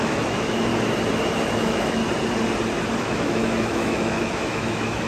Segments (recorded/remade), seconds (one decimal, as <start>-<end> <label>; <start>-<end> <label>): 0.0-0.7 remade; 0.7-1.5 recorded; 1.5-2.0 remade; 2.0-3.0 recorded; 3.0-5.1 remade